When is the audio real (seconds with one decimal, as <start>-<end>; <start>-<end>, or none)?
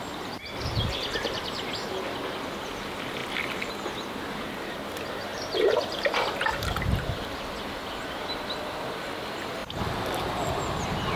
0.0-5.3; 6.9-9.6; 10.6-11.2